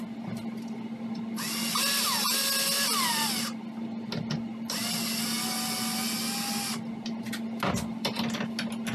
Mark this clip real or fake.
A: real